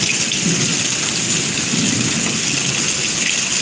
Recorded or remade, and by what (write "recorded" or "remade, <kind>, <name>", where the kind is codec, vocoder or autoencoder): recorded